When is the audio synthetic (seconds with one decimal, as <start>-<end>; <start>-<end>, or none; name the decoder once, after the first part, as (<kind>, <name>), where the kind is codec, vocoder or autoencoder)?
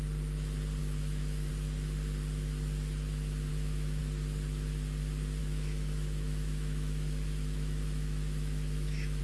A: 0.8-1.5 (autoencoder, DAC-VAE); 3.5-4.0; 5.4-9.2